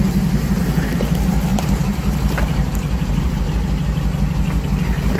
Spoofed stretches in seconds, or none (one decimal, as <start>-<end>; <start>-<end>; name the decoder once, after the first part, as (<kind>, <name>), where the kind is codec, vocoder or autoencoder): 1.5-3.5 (vocoder, BigVGAN v2)